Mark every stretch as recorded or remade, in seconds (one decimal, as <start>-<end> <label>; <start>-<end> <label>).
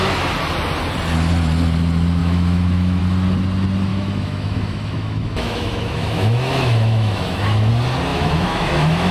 0.0-2.2 recorded; 2.2-3.0 remade; 3.0-3.9 recorded; 3.9-7.7 remade; 7.7-8.1 recorded; 8.1-9.1 remade